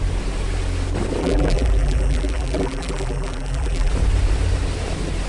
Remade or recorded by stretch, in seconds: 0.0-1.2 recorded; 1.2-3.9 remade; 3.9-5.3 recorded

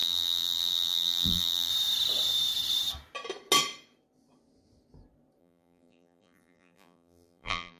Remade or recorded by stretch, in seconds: 0.0-1.7 remade; 1.7-5.4 recorded; 5.4-7.8 remade

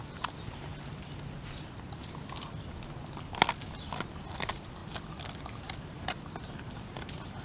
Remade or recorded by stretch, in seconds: 0.0-7.4 recorded